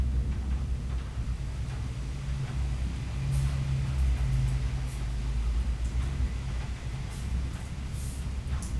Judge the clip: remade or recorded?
recorded